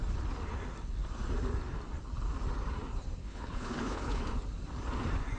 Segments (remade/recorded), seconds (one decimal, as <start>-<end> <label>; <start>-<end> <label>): 0.0-3.2 recorded; 3.2-4.2 remade; 4.2-5.4 recorded